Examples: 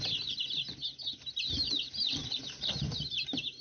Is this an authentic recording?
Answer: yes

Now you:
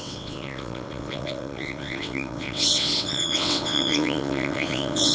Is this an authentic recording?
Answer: no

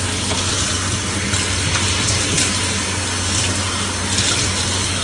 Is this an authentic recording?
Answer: yes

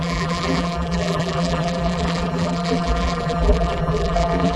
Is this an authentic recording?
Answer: no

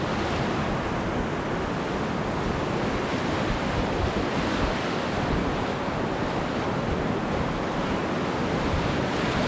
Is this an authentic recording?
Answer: yes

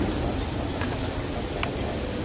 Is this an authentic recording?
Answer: yes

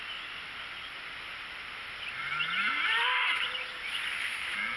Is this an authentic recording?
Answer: yes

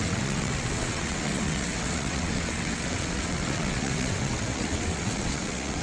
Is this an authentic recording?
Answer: no